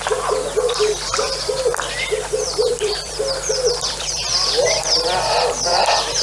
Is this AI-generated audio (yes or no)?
yes